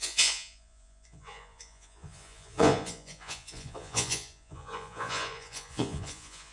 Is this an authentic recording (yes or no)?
no